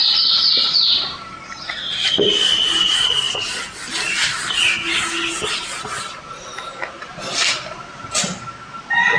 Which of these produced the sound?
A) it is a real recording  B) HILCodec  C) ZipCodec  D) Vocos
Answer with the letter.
A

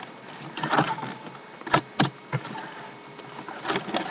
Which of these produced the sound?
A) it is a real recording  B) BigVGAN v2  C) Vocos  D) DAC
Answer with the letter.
A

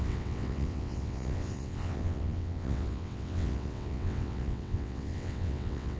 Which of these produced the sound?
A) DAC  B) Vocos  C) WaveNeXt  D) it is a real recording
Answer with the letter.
C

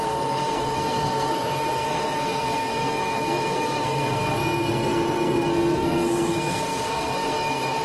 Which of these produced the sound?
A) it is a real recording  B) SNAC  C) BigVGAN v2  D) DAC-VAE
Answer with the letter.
B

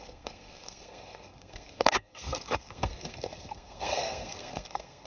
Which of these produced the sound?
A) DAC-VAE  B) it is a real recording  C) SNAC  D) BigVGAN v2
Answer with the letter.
C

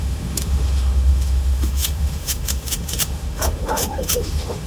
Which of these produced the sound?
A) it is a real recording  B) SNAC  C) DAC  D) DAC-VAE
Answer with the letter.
D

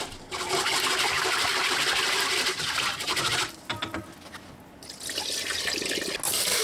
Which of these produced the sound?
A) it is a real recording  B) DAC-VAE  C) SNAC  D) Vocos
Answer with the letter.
A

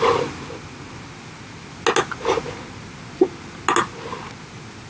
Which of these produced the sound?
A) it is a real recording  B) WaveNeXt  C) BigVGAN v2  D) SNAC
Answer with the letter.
A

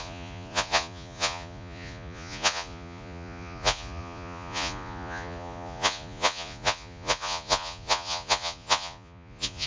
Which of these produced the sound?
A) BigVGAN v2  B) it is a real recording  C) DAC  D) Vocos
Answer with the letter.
D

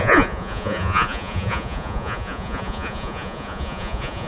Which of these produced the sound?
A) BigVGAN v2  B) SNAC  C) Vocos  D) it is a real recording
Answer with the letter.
C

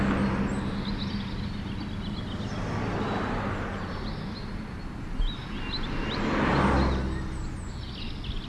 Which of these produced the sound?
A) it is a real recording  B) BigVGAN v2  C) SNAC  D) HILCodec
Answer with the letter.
A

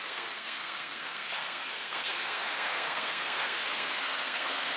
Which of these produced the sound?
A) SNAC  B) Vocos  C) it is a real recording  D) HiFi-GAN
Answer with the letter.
A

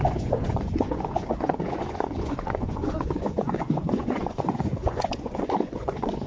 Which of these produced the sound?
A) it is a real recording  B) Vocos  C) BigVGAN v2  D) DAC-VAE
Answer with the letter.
B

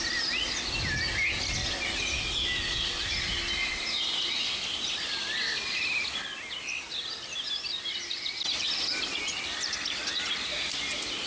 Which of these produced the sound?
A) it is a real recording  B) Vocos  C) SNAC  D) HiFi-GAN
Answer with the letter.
A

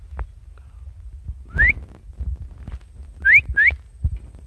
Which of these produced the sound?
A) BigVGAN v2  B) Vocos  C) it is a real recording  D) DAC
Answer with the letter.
C